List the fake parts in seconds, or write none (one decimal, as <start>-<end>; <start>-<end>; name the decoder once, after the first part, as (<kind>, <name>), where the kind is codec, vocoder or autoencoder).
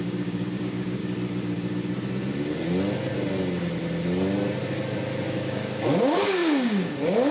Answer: 0.0-1.0 (codec, DAC); 5.4-7.3